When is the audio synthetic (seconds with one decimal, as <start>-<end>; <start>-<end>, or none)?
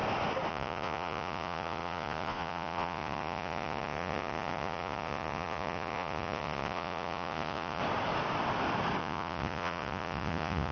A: 0.5-7.8; 9.0-10.7